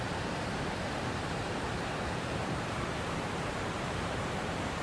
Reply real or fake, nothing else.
fake